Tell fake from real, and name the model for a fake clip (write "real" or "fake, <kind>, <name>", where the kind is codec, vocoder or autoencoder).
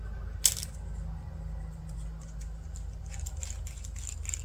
real